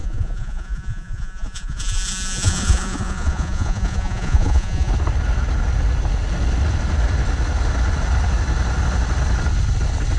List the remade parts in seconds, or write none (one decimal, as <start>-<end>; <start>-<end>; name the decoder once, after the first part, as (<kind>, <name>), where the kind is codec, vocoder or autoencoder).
0.0-4.9 (vocoder, Vocos)